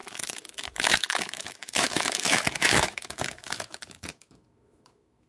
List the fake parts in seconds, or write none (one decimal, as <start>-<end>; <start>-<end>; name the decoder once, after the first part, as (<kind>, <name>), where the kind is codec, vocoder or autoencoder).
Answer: 0.0-5.3 (autoencoder, DAC-VAE)